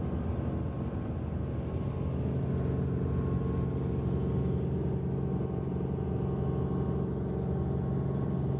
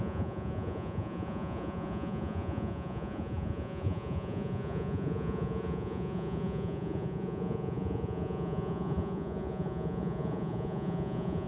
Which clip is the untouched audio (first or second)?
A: first